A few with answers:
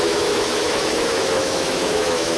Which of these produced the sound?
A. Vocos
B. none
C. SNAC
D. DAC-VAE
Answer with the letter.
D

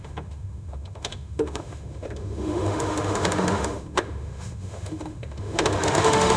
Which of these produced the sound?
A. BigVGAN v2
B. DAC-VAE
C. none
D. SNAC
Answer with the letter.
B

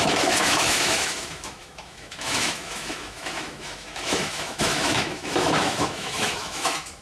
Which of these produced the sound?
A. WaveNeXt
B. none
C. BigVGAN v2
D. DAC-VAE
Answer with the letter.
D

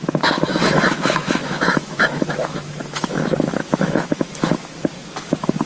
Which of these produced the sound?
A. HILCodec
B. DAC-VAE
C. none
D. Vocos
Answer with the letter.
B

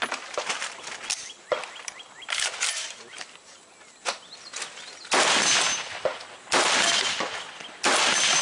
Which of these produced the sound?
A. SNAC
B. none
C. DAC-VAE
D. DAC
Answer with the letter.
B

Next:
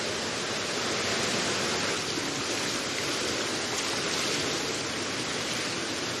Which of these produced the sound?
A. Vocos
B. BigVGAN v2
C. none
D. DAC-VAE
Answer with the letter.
C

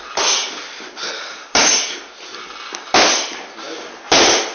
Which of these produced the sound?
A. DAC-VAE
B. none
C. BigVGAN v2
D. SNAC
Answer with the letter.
B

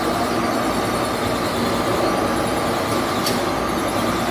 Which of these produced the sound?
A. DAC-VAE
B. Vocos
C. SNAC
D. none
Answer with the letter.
D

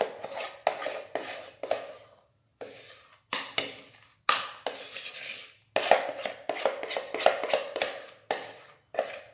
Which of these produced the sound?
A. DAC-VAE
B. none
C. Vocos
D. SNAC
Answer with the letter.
B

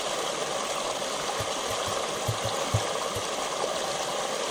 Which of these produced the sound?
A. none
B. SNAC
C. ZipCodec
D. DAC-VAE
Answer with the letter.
A